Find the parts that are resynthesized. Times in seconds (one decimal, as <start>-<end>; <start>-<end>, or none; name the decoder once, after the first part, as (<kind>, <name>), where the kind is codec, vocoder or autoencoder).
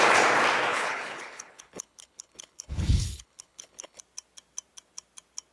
0.7-4.0 (codec, HILCodec)